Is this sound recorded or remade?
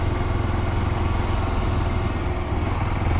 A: recorded